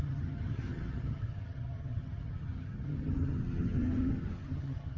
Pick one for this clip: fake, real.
fake